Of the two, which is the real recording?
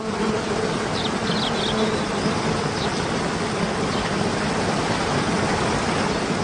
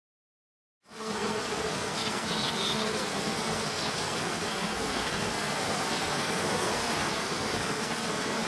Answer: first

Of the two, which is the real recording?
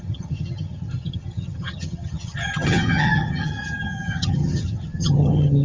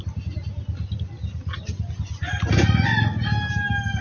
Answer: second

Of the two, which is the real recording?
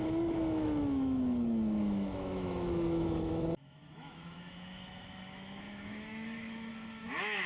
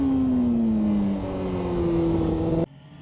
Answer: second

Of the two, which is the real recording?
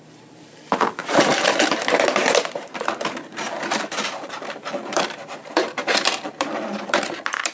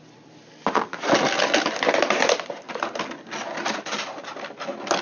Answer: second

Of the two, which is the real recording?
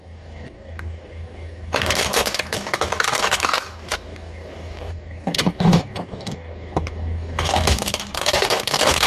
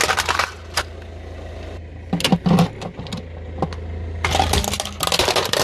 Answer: second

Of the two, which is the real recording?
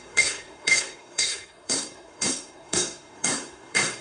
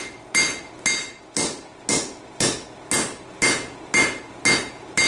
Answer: second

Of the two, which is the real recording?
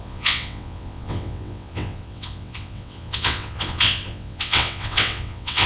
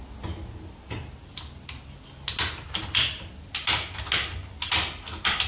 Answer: second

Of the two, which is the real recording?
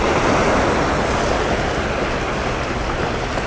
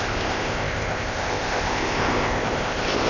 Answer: first